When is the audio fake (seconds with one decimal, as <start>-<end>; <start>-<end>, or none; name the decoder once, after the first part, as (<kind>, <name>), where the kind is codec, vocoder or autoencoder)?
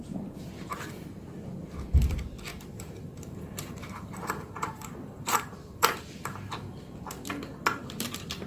2.5-6.5 (vocoder, BigVGAN v2)